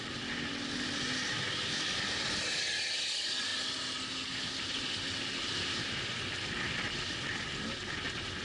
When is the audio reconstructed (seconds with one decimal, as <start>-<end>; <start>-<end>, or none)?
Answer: none